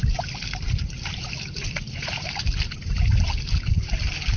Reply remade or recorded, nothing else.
recorded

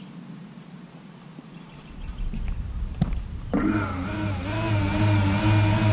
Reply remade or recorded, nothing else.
recorded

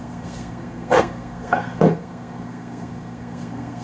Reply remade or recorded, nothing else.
remade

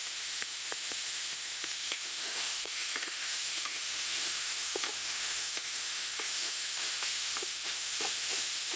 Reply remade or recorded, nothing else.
remade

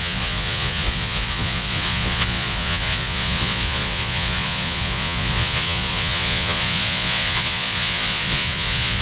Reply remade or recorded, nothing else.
remade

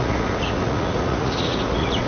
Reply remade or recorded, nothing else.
remade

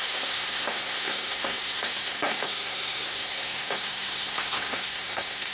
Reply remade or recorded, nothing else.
remade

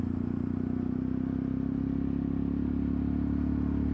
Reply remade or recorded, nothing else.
recorded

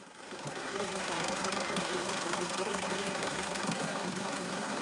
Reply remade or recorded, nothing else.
remade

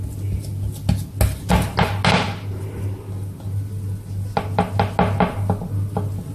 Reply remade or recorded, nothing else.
recorded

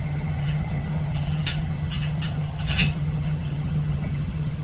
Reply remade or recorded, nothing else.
remade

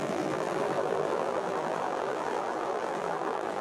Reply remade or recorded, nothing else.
remade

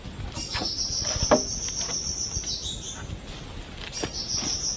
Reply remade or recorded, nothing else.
recorded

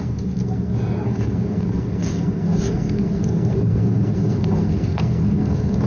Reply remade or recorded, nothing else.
remade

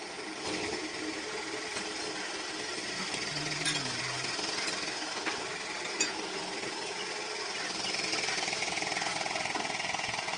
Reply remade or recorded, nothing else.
recorded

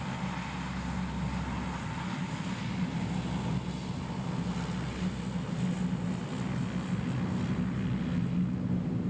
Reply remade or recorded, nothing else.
recorded